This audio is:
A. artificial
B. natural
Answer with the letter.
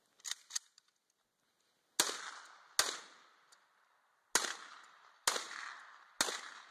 B